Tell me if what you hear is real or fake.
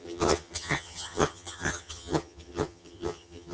fake